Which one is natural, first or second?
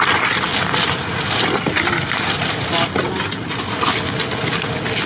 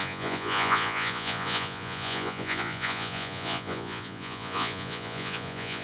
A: first